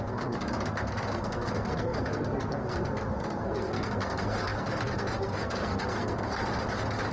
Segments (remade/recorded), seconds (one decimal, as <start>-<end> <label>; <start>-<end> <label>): 0.0-6.4 remade; 6.4-7.1 recorded